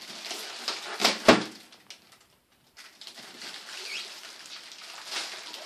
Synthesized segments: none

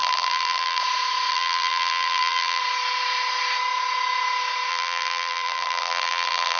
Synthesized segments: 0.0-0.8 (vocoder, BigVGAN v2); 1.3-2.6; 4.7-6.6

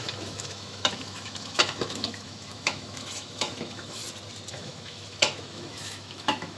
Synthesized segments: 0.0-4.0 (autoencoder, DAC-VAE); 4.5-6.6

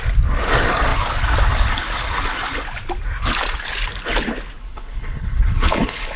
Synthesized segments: 4.6-6.2 (codec, HILCodec)